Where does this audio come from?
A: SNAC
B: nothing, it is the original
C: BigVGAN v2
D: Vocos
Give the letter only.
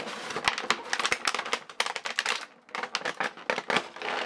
B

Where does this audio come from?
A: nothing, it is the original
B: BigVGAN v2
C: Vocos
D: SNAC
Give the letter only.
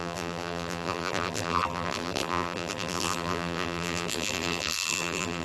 B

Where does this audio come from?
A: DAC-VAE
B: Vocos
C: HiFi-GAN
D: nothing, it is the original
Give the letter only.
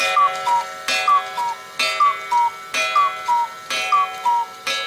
D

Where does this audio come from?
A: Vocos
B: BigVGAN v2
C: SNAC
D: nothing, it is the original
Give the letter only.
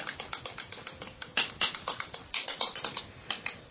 D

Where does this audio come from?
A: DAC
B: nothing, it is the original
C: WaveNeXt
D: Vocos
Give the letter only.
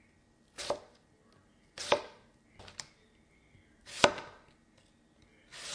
B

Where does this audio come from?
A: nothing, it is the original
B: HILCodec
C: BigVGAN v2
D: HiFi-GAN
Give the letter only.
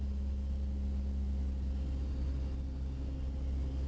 A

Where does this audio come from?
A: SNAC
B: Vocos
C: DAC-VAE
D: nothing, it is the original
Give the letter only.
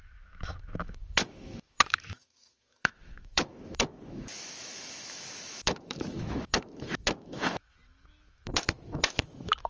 C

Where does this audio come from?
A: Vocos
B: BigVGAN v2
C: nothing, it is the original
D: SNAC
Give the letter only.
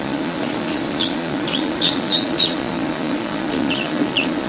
A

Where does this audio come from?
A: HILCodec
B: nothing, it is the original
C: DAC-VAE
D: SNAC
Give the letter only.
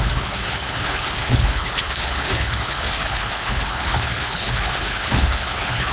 A